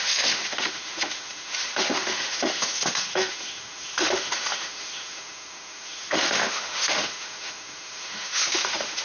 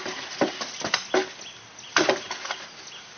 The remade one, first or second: first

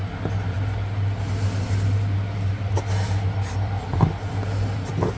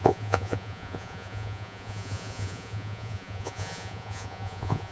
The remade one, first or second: second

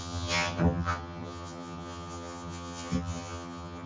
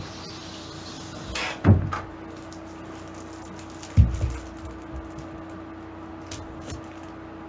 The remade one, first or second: first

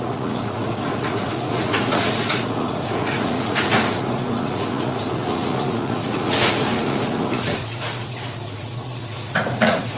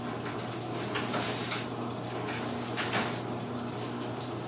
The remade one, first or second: first